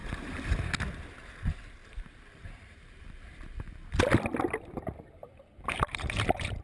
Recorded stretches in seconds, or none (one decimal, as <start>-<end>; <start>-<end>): 0.5-1.8; 4.1-5.2